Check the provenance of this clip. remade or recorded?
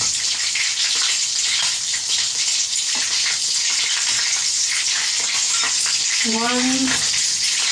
remade